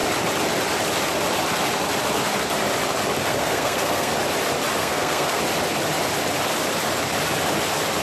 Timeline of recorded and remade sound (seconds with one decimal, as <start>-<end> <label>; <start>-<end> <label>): 0.0-3.3 recorded; 3.3-4.1 remade; 4.1-4.8 recorded; 4.8-5.4 remade; 5.4-8.0 recorded